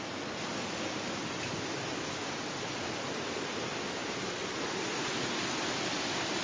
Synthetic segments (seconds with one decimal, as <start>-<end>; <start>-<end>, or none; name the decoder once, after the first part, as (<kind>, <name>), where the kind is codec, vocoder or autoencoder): none